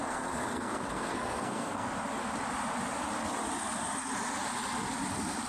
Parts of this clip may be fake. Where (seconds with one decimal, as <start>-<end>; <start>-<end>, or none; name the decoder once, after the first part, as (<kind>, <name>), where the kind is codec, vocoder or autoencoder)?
0.0-1.9 (codec, SNAC)